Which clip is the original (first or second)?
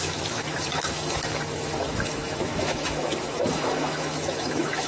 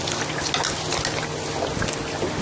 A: second